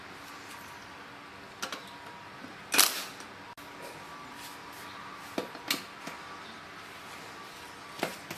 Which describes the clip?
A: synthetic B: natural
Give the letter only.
B